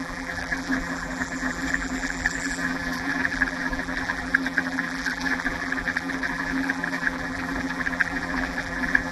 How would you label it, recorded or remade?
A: remade